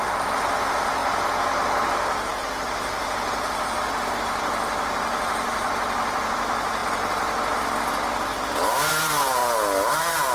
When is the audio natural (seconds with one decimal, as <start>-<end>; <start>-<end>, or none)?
1.0-1.9; 6.8-8.9; 9.4-9.9

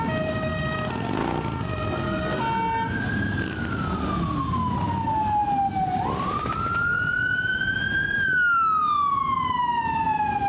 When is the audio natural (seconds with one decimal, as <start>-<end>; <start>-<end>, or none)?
0.0-10.5

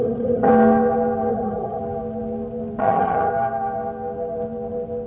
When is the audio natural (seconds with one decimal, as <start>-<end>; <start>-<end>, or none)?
0.5-1.3; 1.8-2.8; 3.3-5.1

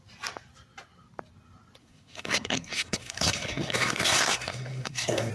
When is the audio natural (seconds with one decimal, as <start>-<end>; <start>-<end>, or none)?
0.0-1.8

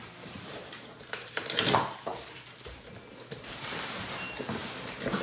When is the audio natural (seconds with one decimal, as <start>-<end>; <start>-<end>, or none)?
2.1-3.3; 4.6-5.2

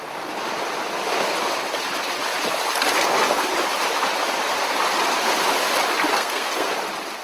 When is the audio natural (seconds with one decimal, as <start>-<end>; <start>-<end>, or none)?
0.0-6.1; 6.7-7.2